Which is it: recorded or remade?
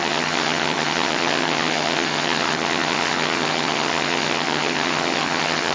remade